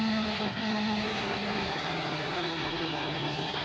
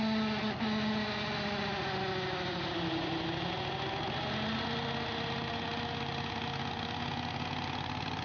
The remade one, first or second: first